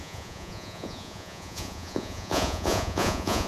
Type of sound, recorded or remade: remade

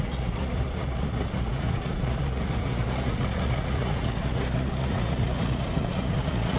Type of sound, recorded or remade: remade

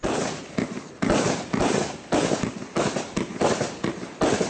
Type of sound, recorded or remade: recorded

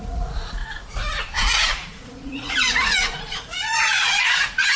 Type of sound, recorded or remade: remade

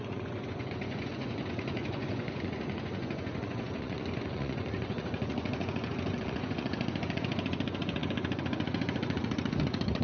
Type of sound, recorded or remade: remade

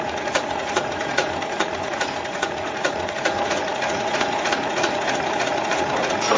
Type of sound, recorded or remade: remade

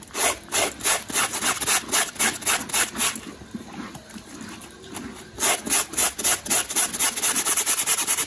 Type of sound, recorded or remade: recorded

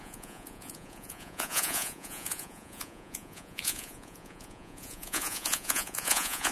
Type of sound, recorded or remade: remade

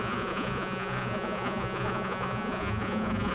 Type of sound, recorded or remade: remade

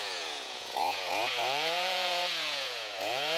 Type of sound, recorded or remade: remade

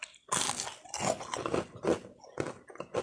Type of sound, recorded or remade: recorded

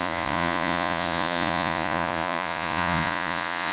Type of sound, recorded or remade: remade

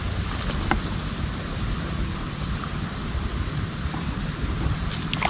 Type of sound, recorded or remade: recorded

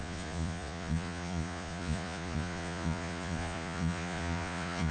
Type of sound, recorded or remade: remade